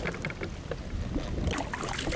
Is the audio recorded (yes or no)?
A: yes